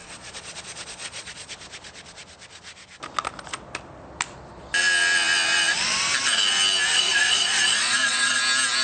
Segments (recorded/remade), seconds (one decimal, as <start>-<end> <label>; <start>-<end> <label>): 0.0-1.5 remade; 1.5-6.9 recorded; 6.9-8.4 remade; 8.4-8.8 recorded